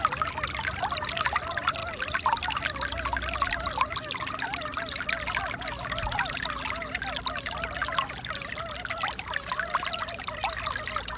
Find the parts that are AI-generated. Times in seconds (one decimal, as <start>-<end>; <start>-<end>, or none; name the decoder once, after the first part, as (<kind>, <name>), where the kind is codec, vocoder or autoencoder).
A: none